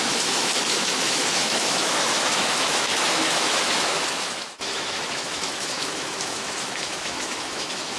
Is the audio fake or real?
fake